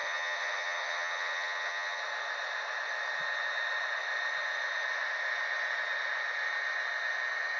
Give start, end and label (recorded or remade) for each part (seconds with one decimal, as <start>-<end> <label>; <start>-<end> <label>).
0.0-2.0 remade; 2.0-7.6 recorded